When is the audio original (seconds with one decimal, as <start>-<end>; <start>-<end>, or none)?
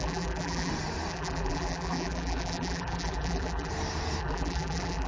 0.7-1.1; 3.7-4.2